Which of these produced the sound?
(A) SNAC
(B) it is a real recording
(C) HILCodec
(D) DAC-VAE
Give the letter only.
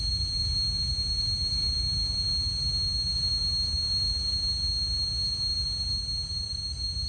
B